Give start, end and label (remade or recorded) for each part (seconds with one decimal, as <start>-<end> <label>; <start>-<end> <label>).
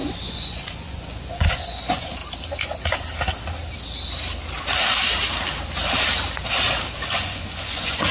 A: 0.0-2.2 remade; 2.2-7.1 recorded; 7.1-8.1 remade